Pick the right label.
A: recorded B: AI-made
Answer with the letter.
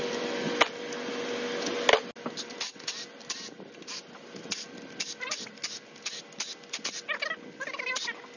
A